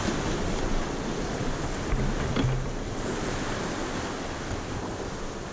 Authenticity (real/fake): real